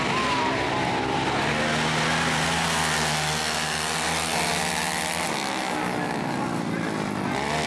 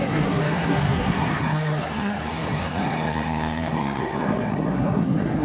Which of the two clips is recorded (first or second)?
first